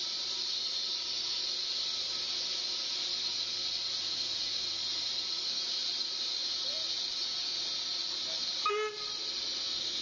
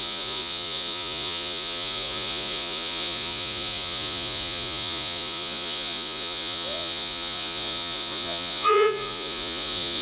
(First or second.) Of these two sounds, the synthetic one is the second